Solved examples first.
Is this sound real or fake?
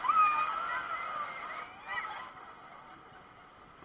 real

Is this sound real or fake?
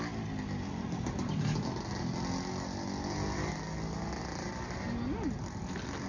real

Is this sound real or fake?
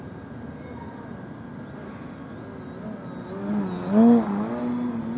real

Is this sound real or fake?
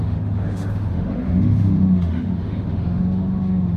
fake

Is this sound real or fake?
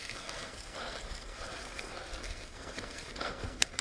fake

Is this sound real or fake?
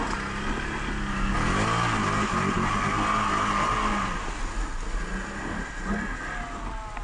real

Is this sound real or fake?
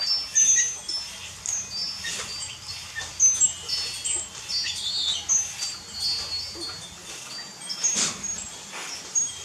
real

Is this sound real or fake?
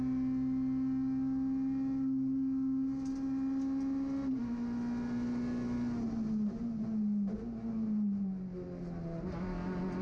real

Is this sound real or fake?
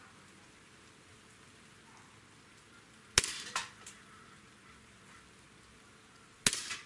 real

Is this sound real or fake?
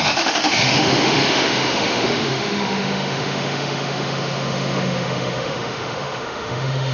fake